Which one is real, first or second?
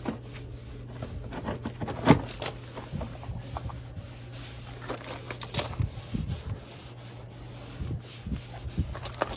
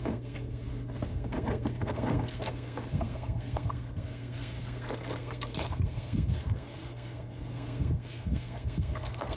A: first